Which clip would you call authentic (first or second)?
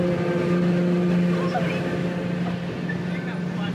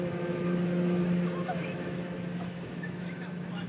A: first